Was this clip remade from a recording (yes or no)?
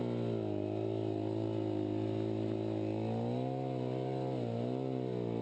no